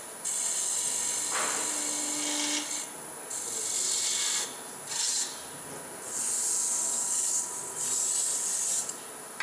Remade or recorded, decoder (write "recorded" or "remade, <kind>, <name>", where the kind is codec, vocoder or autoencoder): recorded